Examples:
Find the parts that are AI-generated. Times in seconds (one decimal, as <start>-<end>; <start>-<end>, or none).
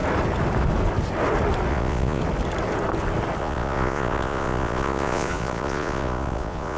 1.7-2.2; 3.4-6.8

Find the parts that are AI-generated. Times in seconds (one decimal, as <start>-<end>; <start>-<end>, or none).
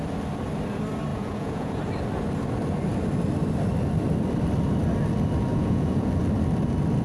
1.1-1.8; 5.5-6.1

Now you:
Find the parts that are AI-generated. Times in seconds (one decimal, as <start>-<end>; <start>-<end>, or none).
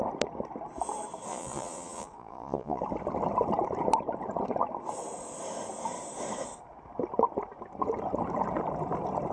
1.3-2.8